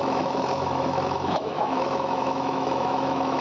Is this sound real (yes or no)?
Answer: no